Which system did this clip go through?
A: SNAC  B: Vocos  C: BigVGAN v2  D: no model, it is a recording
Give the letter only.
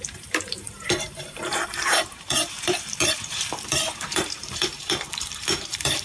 C